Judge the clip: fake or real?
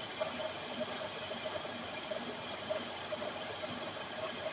fake